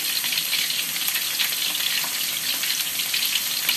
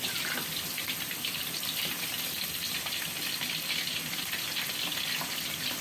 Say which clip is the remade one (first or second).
first